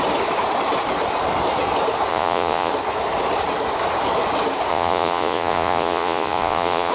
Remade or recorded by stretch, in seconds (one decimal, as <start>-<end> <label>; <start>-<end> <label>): 0.0-2.1 recorded; 2.1-2.7 remade; 2.7-4.7 recorded; 4.7-6.9 remade